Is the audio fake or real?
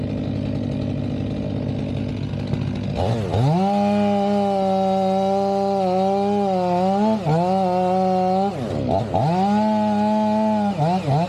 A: real